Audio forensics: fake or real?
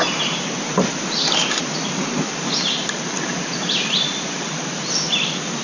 real